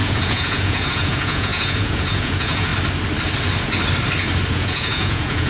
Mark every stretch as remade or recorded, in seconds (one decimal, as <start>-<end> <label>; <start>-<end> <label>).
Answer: 0.0-2.7 remade; 2.7-4.5 recorded; 4.5-5.5 remade